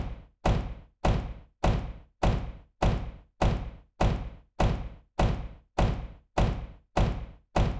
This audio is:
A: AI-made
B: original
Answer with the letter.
B